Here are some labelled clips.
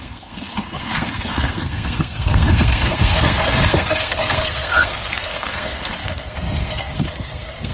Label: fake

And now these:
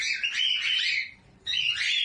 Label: fake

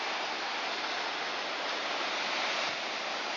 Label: real